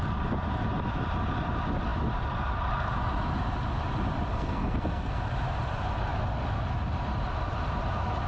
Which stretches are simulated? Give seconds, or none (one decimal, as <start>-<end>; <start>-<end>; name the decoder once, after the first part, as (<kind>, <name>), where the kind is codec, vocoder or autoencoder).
4.3-5.2 (codec, SNAC)